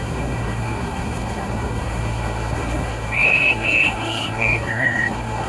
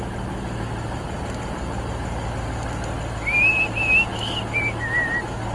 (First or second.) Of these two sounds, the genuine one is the second